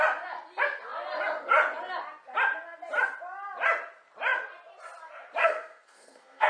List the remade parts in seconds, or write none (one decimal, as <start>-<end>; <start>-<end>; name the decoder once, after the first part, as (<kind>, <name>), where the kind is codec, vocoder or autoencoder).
5.4-6.5 (codec, SNAC)